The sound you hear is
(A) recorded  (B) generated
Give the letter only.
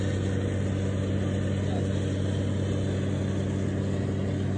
A